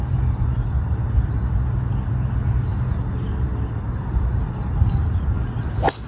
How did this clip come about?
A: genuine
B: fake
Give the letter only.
A